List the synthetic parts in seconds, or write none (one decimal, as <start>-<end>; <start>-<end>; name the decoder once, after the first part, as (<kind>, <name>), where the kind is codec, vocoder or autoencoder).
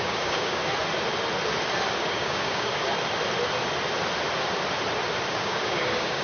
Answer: 0.0-0.6 (codec, DAC); 2.0-2.8; 5.3-6.2